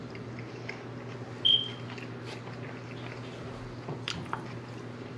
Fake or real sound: real